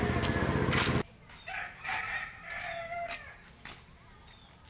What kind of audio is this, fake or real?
real